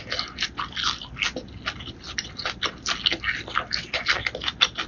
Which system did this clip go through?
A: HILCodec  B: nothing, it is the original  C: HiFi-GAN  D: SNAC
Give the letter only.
B